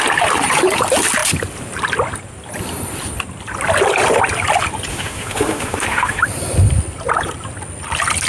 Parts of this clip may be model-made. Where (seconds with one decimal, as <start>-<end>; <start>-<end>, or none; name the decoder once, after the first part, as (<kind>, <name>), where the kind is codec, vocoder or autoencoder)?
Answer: 4.9-6.2 (autoencoder, DAC-VAE)